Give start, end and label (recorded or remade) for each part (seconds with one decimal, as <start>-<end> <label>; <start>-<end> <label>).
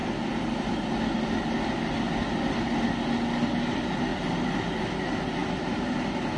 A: 0.0-6.4 recorded